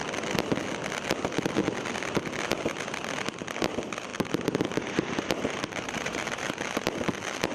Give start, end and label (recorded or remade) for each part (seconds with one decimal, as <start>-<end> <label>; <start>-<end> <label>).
0.0-4.1 recorded; 4.1-6.6 remade; 6.6-7.5 recorded